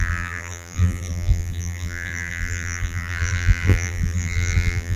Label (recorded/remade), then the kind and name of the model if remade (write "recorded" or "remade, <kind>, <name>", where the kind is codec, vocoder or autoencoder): remade, vocoder, BigVGAN v2